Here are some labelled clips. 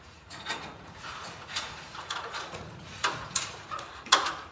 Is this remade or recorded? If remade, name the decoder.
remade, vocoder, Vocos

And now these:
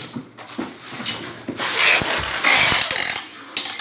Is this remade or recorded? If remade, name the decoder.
recorded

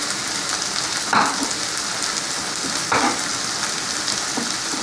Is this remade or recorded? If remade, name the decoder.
recorded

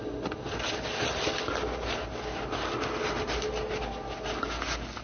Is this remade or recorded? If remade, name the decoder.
recorded